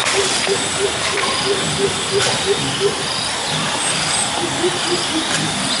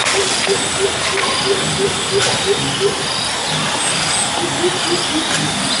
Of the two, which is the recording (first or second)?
second